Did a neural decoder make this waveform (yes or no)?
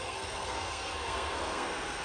yes